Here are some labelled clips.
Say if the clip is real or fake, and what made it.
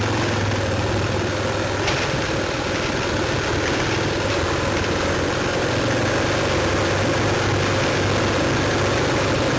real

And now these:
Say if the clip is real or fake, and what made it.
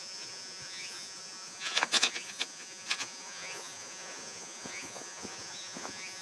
fake, vocoder, Vocos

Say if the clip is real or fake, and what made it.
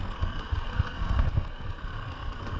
fake, codec, SNAC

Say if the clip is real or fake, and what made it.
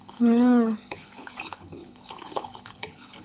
fake, codec, HILCodec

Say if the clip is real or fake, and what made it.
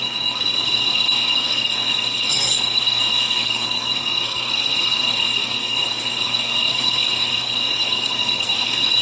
fake, codec, SNAC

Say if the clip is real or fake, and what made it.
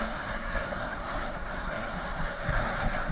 fake, codec, SNAC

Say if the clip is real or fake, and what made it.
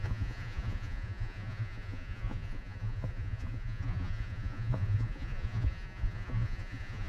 fake, vocoder, Vocos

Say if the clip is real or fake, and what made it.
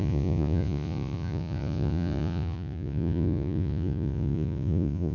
fake, vocoder, Vocos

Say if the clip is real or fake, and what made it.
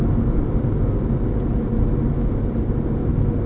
real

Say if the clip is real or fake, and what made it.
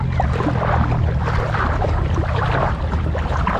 real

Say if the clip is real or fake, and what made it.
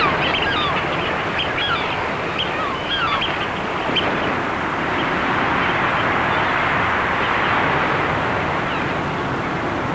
real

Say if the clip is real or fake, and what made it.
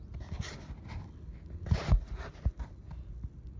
real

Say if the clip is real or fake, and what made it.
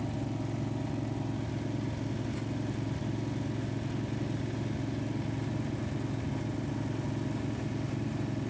real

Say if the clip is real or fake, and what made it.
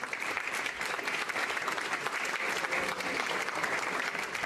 fake, vocoder, BigVGAN v2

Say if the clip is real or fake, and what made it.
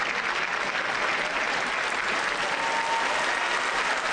real